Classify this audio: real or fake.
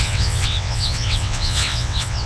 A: fake